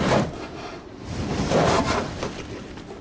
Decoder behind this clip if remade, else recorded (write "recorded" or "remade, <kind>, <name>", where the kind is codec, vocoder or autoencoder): remade, vocoder, BigVGAN v2